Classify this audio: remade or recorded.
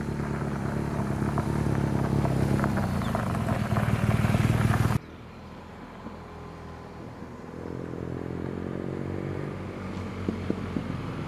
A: recorded